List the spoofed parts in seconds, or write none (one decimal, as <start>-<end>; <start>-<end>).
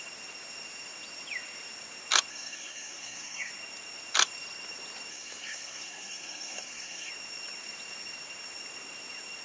2.3-3.5; 5.1-7.1